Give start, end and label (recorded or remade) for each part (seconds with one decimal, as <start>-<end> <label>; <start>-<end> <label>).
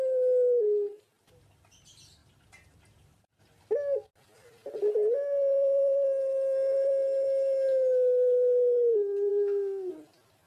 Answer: 0.0-9.3 recorded; 9.3-9.9 remade; 9.9-10.5 recorded